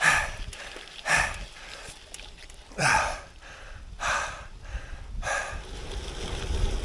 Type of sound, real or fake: fake